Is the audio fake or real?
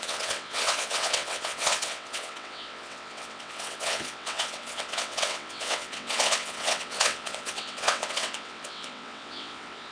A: fake